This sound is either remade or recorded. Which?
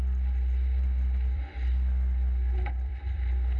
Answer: remade